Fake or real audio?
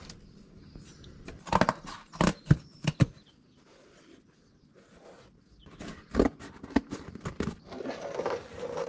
real